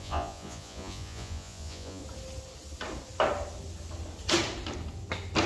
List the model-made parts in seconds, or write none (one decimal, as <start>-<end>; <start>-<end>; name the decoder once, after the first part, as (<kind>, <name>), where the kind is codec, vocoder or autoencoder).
0.0-2.0 (vocoder, Vocos)